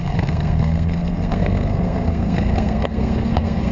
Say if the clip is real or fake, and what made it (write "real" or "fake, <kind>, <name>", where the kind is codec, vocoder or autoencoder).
fake, codec, SNAC